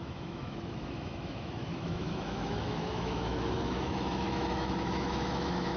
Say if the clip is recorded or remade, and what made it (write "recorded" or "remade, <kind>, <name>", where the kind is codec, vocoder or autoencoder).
remade, autoencoder, DAC-VAE